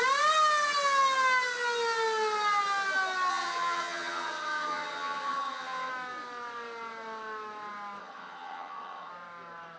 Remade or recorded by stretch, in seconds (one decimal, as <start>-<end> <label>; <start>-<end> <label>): 0.0-3.3 recorded; 3.3-5.9 remade; 5.9-8.0 recorded; 8.0-9.1 remade; 9.1-9.8 recorded